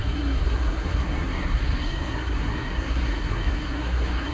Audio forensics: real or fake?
fake